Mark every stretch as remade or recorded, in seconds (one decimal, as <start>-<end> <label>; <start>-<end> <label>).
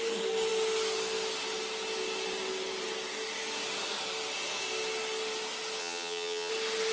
0.0-5.8 recorded; 5.8-6.5 remade; 6.5-6.9 recorded